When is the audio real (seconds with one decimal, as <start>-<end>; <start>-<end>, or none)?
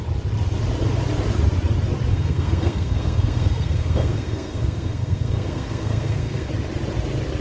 0.0-2.1; 6.5-7.4